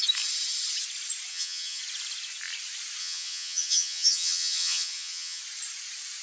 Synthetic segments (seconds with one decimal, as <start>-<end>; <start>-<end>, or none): 1.3-1.8; 3.0-5.4